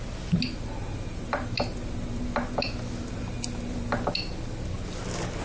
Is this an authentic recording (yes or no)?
yes